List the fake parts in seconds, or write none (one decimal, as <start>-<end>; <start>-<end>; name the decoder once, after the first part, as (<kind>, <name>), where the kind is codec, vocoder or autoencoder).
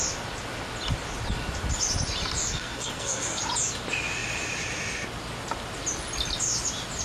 2.4-3.4 (codec, SNAC)